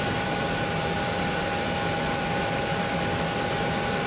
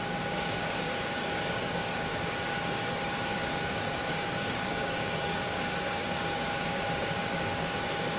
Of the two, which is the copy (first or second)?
second